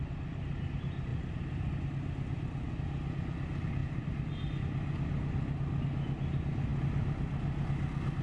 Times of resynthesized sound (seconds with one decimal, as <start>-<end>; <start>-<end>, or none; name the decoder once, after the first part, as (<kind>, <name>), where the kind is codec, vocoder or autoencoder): none